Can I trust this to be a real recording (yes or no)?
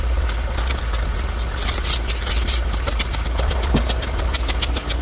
yes